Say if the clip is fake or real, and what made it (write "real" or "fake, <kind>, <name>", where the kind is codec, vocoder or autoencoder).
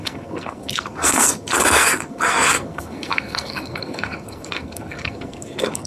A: fake, codec, SNAC